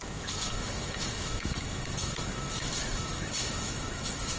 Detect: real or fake fake